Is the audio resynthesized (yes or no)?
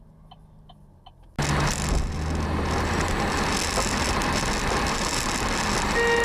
no